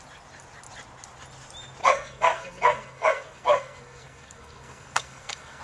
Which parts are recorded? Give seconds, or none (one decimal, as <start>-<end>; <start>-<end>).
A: 0.0-1.8